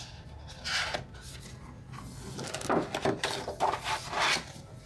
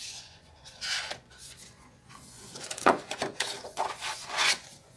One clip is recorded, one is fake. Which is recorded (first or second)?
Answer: first